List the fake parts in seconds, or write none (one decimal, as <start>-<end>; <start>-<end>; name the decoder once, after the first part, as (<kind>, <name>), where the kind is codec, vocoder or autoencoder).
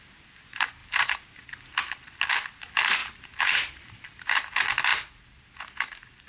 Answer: 0.8-1.4 (vocoder, BigVGAN v2); 3.0-3.9